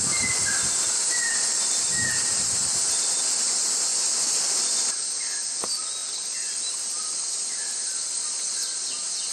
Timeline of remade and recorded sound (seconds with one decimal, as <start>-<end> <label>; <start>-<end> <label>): 0.0-9.3 recorded

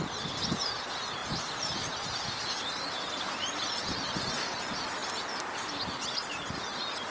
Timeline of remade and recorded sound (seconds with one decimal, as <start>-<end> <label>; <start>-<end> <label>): 0.0-7.1 recorded